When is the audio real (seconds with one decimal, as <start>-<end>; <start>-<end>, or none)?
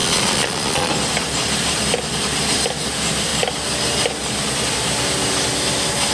0.9-6.1